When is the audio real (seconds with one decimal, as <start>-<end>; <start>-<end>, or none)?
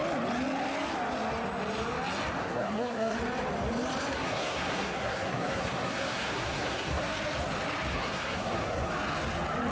0.0-2.4; 3.2-4.1; 7.0-7.9; 8.9-9.7